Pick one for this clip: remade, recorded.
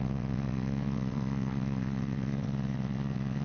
remade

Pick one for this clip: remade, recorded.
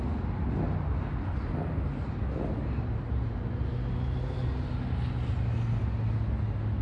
recorded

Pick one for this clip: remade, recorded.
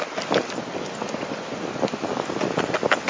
recorded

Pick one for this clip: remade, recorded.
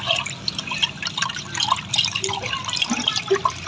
remade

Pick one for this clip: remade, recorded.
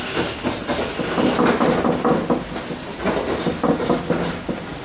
recorded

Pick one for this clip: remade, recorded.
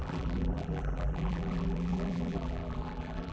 remade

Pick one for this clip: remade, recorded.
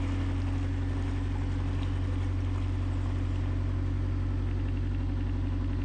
recorded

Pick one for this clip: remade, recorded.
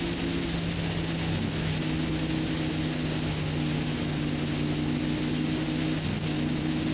recorded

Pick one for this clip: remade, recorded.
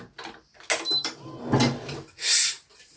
recorded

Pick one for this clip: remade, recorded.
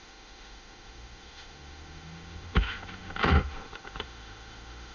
remade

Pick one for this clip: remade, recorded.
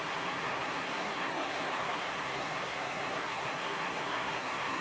remade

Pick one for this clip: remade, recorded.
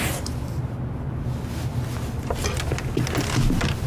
recorded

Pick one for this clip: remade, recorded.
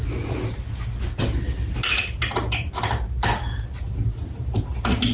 recorded